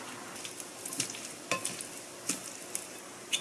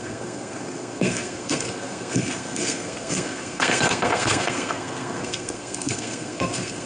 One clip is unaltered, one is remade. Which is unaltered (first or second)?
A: first